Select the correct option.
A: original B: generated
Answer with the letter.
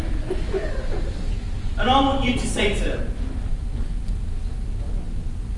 A